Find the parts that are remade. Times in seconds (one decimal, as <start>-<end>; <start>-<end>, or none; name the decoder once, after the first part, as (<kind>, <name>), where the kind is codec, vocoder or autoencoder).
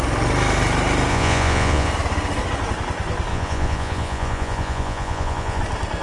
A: 1.1-1.9 (vocoder, Vocos); 3.3-5.6